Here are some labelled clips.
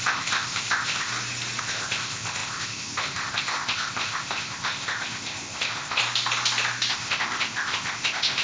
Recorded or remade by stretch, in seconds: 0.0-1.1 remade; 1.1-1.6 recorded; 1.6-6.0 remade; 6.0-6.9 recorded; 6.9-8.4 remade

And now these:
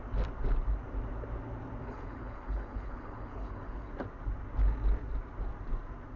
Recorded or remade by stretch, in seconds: 0.0-1.8 recorded; 1.8-3.9 remade; 3.9-6.2 recorded

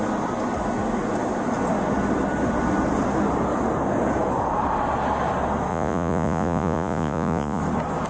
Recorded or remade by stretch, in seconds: 0.0-5.7 recorded; 5.7-7.6 remade; 7.6-8.1 recorded

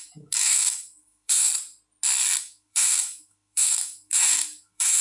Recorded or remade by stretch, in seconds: 0.0-1.5 remade; 1.5-2.4 recorded; 2.4-5.0 remade